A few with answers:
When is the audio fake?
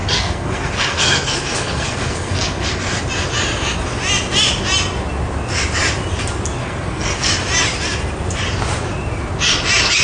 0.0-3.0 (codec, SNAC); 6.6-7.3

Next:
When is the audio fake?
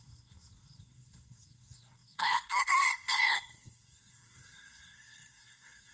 0.0-5.9 (codec, SNAC)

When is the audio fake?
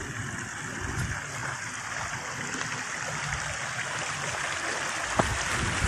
none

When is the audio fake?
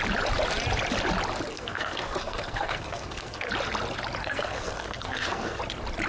1.5-3.5 (codec, SNAC); 4.2-5.6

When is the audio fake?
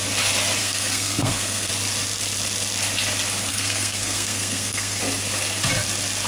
0.6-1.7 (codec, SNAC); 3.5-5.0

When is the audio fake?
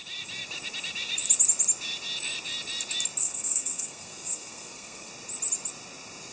3.2-5.1 (codec, SNAC)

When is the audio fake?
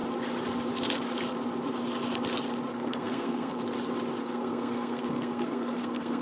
2.7-3.6 (codec, SNAC); 4.2-6.2